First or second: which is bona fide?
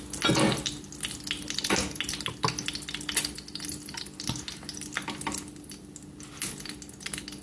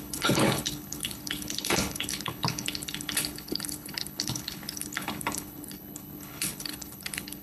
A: first